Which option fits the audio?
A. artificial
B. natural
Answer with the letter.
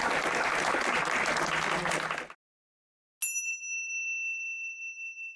B